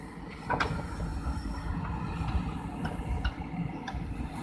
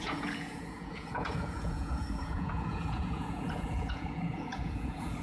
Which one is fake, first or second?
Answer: second